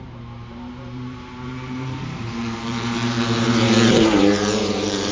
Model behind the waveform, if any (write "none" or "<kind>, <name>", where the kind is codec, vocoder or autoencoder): vocoder, BigVGAN v2